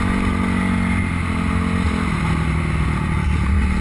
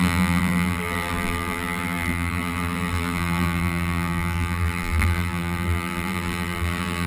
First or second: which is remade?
second